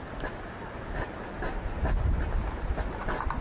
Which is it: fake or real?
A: real